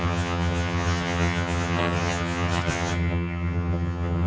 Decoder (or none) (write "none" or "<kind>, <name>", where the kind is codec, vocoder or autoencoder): vocoder, HiFi-GAN